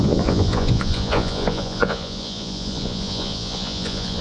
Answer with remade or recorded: remade